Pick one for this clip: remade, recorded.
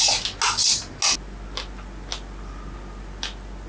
recorded